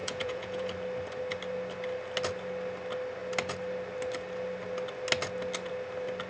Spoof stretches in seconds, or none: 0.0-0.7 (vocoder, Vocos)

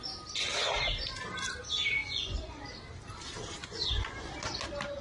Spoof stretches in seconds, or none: 2.0-2.6 (vocoder, Vocos); 3.6-4.3

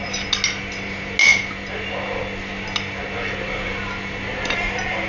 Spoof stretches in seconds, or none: none

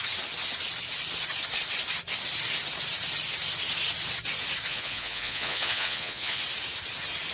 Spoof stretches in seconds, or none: 4.7-6.4 (vocoder, Vocos)